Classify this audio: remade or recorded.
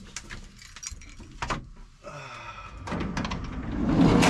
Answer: recorded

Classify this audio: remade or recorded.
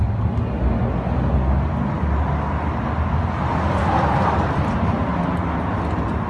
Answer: recorded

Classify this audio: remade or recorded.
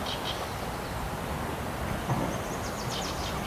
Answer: recorded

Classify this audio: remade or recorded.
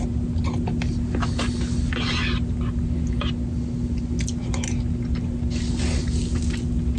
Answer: recorded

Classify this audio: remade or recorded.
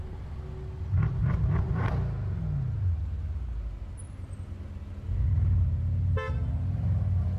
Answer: recorded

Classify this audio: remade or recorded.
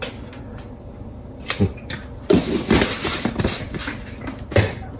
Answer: recorded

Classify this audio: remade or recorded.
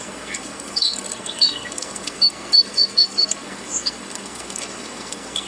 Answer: remade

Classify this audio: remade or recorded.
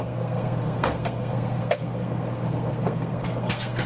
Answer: remade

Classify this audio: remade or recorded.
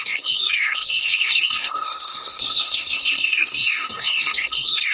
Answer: remade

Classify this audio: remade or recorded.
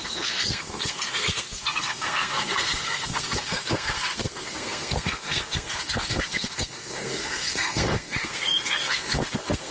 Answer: remade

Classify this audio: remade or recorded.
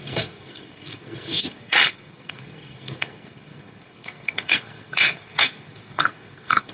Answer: remade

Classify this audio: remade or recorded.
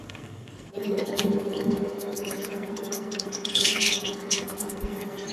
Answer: remade